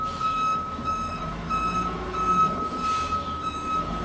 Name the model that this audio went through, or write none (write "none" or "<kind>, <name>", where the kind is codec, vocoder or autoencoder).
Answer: autoencoder, DAC-VAE